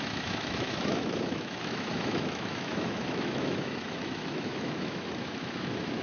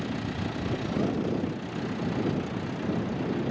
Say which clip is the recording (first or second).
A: second